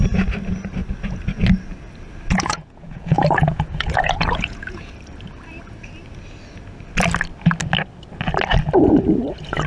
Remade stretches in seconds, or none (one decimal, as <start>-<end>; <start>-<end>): 2.3-4.9